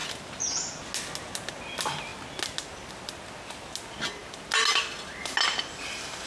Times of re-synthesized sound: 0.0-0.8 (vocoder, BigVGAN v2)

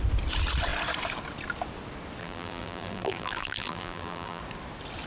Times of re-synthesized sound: 2.2-4.4 (vocoder, BigVGAN v2)

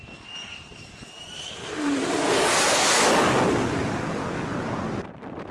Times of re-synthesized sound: 0.7-3.1 (vocoder, BigVGAN v2)

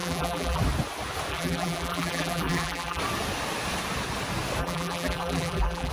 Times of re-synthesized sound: 0.0-0.6 (vocoder, BigVGAN v2); 1.3-3.0; 4.6-5.9